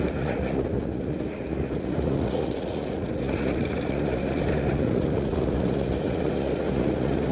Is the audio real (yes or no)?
no